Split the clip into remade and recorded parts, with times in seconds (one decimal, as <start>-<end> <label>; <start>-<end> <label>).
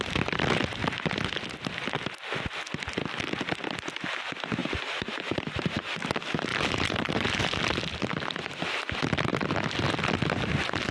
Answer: 0.0-4.6 recorded; 4.6-6.0 remade; 6.0-6.5 recorded; 6.5-7.4 remade; 7.4-10.9 recorded